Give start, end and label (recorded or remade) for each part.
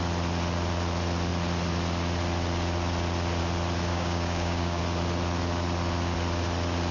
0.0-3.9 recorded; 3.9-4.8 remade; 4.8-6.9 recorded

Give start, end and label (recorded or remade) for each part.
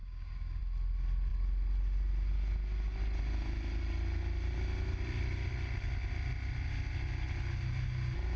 0.0-0.6 remade; 0.6-8.4 recorded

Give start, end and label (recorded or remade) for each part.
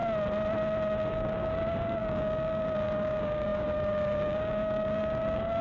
0.0-1.1 recorded; 1.1-5.6 remade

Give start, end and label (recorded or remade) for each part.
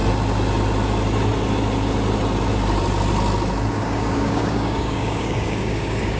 0.0-3.7 recorded; 3.7-6.2 remade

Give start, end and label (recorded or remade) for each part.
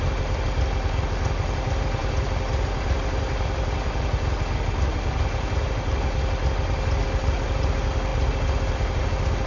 0.0-9.5 recorded